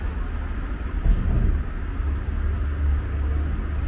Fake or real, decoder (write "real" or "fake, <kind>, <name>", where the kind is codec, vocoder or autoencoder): real